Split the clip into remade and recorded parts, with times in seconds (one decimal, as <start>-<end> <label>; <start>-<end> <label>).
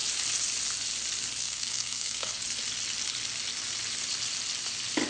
0.0-1.4 recorded; 1.4-2.4 remade; 2.4-5.1 recorded